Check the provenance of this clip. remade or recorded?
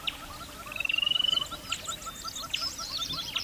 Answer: recorded